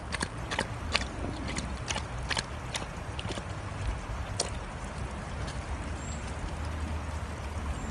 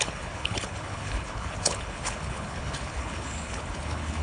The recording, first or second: first